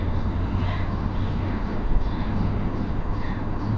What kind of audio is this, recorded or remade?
remade